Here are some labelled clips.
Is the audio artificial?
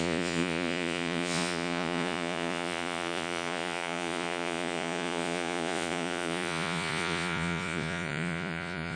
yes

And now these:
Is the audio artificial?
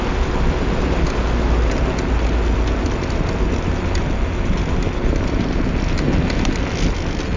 no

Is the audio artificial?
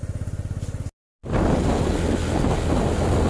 no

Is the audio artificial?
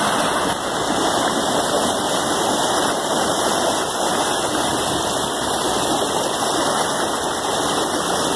no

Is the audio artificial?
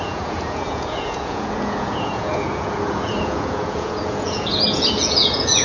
yes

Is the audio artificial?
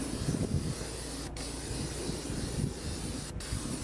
no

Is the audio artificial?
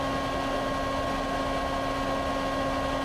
no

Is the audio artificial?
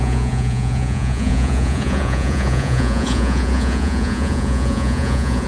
yes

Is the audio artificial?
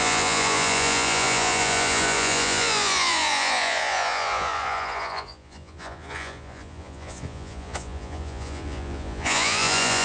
yes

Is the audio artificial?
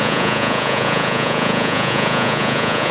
yes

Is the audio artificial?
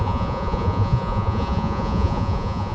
yes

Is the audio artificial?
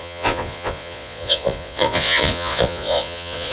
yes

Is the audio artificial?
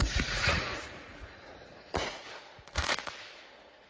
yes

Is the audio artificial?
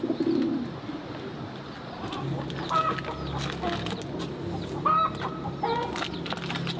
no